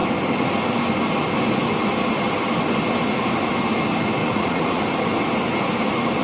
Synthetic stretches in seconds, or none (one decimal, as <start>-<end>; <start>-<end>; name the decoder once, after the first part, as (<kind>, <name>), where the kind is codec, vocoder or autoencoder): 4.2-4.8 (vocoder, Vocos)